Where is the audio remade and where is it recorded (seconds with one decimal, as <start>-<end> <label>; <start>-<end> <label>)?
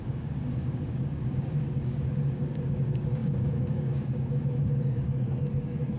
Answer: 0.0-6.0 remade